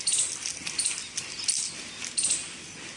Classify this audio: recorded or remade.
recorded